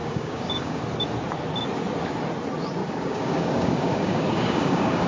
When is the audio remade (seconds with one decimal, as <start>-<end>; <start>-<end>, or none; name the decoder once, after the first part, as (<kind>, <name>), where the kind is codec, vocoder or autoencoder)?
0.0-0.8 (codec, DAC); 2.8-5.1